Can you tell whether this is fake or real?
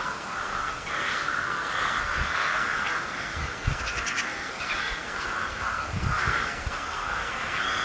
fake